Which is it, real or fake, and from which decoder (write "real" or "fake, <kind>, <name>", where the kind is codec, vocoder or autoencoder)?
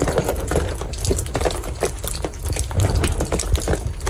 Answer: real